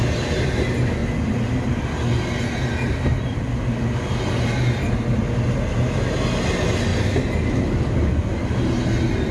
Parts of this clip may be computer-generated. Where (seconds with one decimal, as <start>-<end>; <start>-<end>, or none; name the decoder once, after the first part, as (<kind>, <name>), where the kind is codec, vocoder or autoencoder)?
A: none